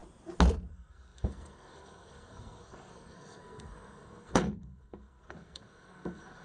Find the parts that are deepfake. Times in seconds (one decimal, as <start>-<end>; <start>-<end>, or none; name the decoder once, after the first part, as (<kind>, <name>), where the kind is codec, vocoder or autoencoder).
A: 0.7-6.4 (codec, SNAC)